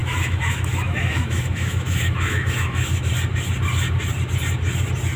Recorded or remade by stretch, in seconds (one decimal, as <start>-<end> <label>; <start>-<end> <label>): 0.0-3.1 remade; 3.1-5.2 recorded